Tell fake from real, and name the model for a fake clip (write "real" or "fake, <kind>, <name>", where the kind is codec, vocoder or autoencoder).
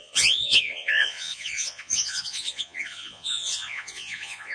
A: fake, vocoder, Vocos